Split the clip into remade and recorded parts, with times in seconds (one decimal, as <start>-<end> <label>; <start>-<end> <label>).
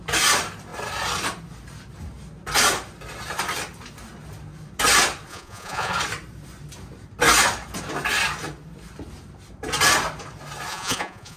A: 0.0-5.3 recorded; 5.3-5.9 remade; 5.9-10.7 recorded; 10.7-11.4 remade